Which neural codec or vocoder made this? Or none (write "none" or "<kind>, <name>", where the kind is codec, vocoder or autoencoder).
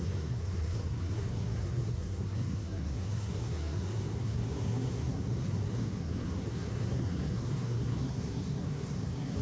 codec, SNAC